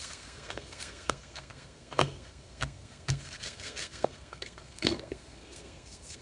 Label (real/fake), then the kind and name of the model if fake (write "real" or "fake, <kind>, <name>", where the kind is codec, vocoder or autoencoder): fake, codec, SNAC